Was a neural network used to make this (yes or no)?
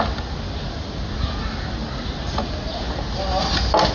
no